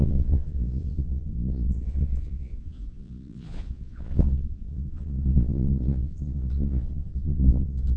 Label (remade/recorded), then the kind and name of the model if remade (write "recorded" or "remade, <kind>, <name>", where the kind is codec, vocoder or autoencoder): remade, vocoder, Vocos